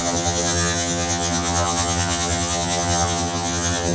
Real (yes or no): no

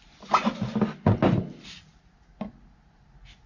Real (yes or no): yes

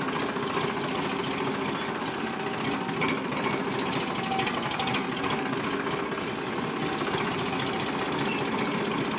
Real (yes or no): yes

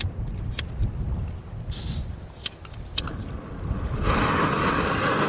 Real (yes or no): yes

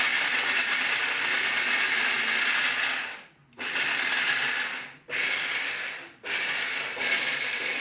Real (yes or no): yes